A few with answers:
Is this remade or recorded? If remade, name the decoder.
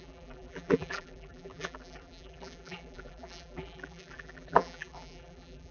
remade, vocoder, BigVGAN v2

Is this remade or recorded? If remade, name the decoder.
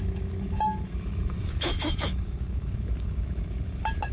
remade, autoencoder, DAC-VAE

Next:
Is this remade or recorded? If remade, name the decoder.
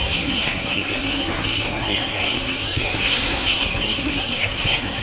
remade, codec, SNAC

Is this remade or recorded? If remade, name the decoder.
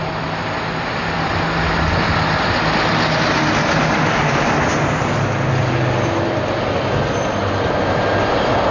recorded